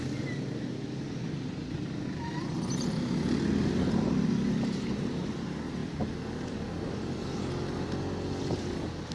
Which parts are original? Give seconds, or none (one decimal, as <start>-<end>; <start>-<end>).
0.0-9.1